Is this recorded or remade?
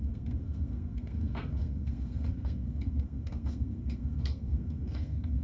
remade